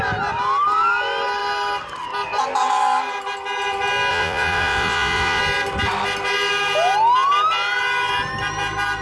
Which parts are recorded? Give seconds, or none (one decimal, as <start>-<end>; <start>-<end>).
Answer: 0.0-4.1; 5.4-9.0